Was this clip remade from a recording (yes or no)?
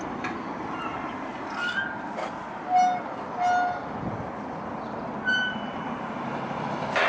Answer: no